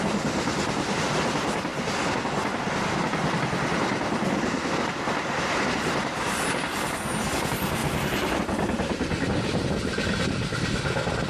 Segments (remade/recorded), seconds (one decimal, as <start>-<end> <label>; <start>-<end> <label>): 0.0-11.3 recorded